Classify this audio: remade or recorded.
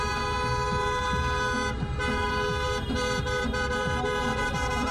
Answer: remade